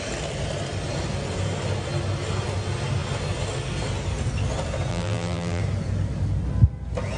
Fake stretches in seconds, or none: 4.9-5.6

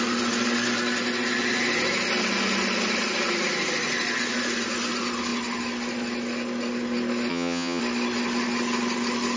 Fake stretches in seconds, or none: 7.3-7.8

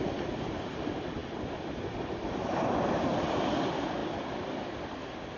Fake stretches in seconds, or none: none

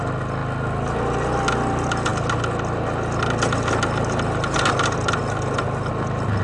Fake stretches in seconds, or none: none

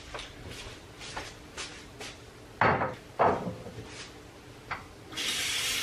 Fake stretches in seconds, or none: none

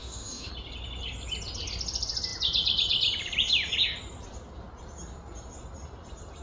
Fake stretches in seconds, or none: 0.0-0.5

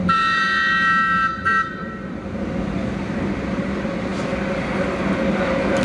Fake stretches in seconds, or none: 1.3-2.2

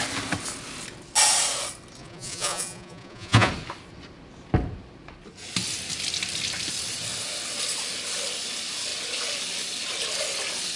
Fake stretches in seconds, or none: 2.0-3.5